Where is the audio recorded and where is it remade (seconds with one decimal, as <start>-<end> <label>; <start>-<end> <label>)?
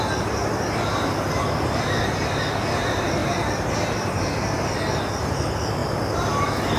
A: 0.0-0.4 recorded; 0.4-2.0 remade; 2.0-3.2 recorded; 3.2-4.9 remade; 4.9-6.8 recorded